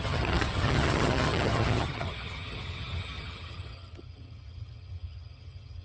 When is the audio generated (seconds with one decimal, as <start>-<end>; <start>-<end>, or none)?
0.0-5.8